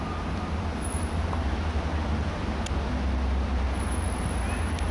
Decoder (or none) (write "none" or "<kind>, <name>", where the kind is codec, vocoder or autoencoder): none